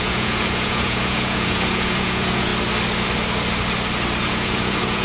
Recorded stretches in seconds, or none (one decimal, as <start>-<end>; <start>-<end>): 2.5-4.2